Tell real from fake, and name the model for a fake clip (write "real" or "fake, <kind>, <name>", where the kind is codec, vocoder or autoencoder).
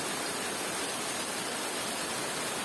real